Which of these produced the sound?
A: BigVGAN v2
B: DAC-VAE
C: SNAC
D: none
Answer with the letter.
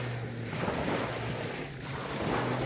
D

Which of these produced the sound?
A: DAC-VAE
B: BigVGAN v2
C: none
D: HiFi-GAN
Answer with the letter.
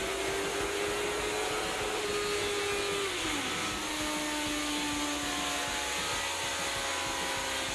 C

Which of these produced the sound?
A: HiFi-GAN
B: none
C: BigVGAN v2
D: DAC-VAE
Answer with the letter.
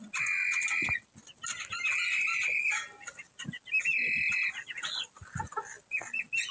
B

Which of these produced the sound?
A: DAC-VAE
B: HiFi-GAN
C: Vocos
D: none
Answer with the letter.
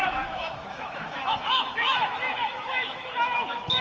A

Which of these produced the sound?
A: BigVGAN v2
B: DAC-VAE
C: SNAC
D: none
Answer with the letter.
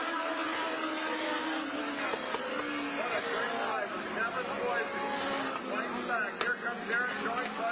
D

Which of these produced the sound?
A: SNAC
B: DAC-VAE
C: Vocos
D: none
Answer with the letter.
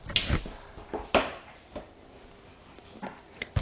D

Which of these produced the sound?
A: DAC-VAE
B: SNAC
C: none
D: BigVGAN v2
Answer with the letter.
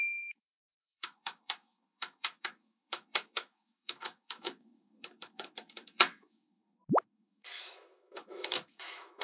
A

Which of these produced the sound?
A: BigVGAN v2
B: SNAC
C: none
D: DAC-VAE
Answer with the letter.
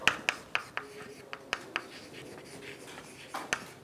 C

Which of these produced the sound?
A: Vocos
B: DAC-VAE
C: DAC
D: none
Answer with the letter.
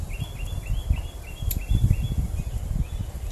D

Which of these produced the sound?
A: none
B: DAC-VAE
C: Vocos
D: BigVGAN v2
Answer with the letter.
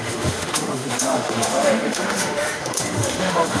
B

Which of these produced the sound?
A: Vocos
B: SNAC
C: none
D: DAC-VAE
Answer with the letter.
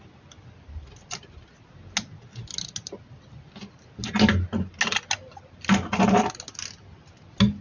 C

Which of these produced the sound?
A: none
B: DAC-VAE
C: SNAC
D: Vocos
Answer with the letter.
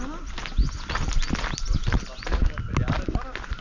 A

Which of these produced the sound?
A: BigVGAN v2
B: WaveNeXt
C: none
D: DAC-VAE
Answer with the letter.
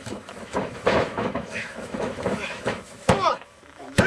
D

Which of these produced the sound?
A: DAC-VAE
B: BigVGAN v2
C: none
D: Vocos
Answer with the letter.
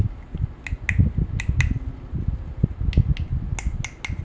C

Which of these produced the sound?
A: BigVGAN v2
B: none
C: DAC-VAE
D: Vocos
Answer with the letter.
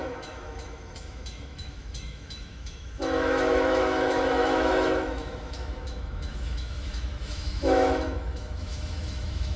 C